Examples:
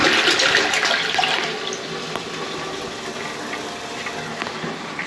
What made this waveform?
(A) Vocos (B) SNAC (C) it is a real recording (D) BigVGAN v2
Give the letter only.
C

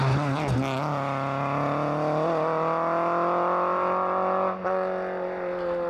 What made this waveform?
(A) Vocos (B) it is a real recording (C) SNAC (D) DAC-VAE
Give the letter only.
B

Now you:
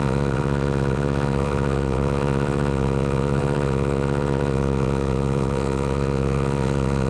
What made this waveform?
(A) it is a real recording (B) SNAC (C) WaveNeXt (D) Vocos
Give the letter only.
C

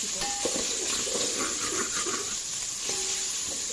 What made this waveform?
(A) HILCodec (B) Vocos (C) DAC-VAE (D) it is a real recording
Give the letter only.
D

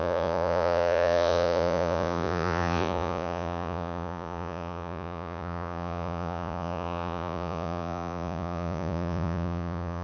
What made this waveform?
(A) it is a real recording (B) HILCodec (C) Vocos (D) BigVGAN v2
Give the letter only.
C